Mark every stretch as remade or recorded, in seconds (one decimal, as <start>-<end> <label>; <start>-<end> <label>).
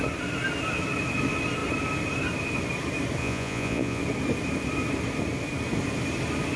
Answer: 0.0-3.2 recorded; 3.2-4.0 remade; 4.0-6.6 recorded